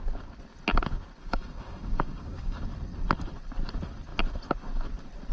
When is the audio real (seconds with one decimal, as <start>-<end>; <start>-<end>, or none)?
0.0-1.2; 2.6-5.3